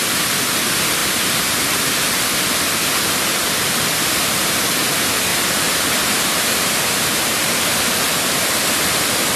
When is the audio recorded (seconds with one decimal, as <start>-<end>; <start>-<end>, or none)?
0.0-1.0; 1.9-5.3; 8.0-9.4